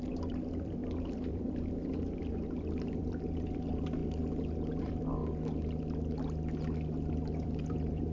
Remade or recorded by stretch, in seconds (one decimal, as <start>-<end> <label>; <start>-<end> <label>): 0.0-4.0 remade; 4.0-4.8 recorded; 4.8-5.2 remade; 5.2-7.1 recorded; 7.1-8.1 remade